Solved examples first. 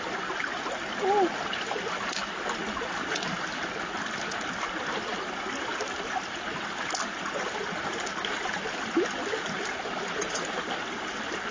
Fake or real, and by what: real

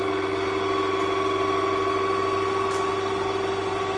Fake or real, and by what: real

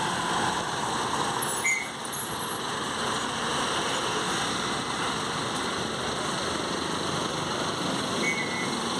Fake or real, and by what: real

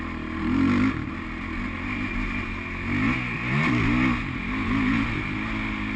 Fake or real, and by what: real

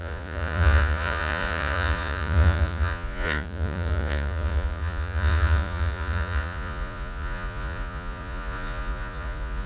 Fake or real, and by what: fake, vocoder, Vocos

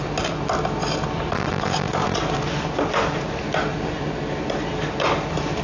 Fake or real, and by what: real